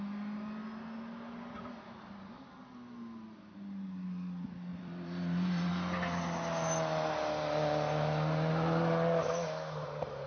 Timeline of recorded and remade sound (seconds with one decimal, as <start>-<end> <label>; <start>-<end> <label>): 0.0-4.7 recorded; 4.7-5.7 remade; 5.7-10.3 recorded